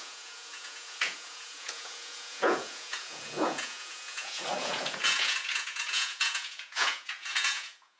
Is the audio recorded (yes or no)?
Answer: no